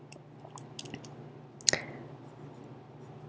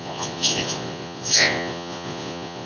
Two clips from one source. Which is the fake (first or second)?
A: second